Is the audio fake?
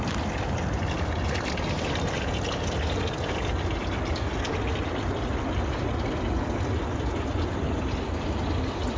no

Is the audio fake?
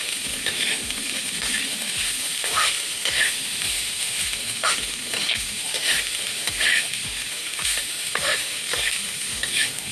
yes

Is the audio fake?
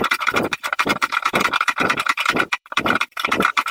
yes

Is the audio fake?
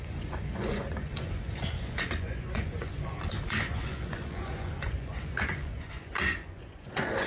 yes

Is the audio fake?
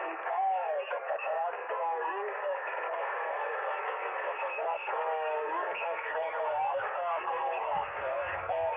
yes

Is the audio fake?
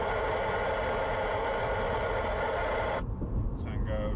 no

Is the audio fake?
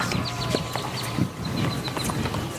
no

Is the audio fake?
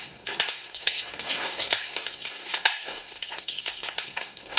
yes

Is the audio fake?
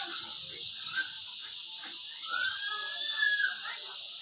no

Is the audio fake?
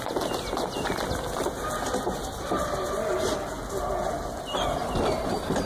no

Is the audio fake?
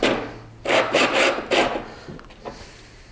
no